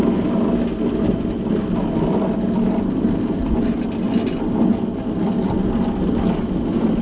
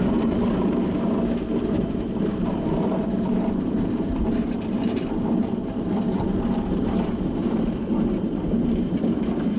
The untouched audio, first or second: first